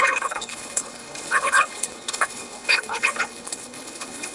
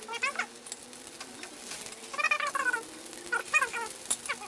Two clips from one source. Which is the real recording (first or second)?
second